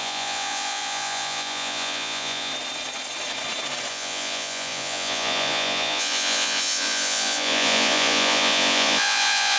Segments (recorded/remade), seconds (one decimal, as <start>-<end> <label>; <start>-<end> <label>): 0.0-2.5 remade; 2.5-3.9 recorded; 3.9-9.6 remade